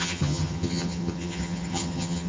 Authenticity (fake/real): fake